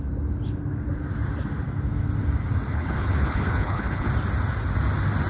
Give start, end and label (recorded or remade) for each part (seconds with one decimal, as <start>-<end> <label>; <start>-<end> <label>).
0.0-2.7 recorded; 2.7-4.1 remade; 4.1-5.3 recorded